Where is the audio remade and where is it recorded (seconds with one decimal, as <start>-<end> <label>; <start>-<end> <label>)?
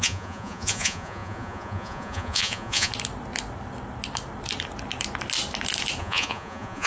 0.0-2.9 remade; 2.9-6.0 recorded; 6.0-6.9 remade